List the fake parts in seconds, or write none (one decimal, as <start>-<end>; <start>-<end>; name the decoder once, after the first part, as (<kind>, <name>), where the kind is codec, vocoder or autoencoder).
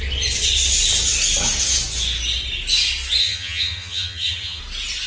3.2-4.6 (vocoder, HiFi-GAN)